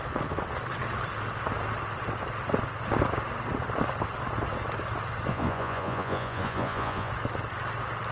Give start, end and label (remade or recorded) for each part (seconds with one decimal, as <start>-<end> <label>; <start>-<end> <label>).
0.0-5.3 recorded; 5.3-7.1 remade; 7.1-8.1 recorded